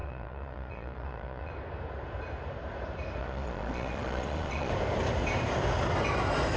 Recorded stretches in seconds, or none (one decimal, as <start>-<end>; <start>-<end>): 1.5-3.2; 4.7-6.6